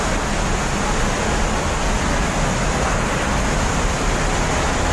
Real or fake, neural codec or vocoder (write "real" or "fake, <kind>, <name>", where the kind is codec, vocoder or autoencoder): real